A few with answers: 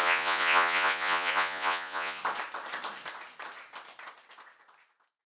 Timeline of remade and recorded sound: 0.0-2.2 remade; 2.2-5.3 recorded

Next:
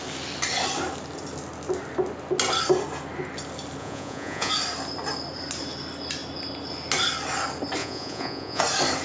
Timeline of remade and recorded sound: 0.0-3.8 recorded; 3.8-4.5 remade; 4.5-7.8 recorded; 7.8-8.6 remade; 8.6-9.0 recorded

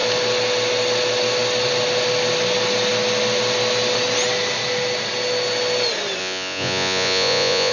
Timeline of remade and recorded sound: 0.0-6.2 recorded; 6.2-7.7 remade

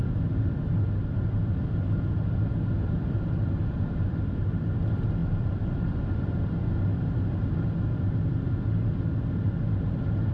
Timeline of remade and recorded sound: 0.0-10.3 remade

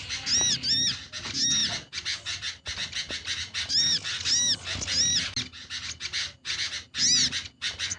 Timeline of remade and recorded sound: 0.0-8.0 recorded

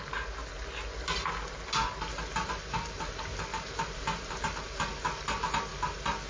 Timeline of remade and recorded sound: 0.0-3.5 recorded; 3.5-4.5 remade; 4.5-6.3 recorded

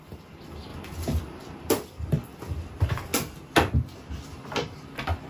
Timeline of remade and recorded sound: 0.0-0.7 remade; 0.7-1.7 recorded; 1.7-3.1 remade; 3.1-4.2 recorded; 4.2-5.3 remade

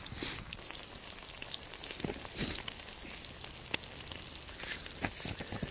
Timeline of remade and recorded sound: 0.0-5.7 recorded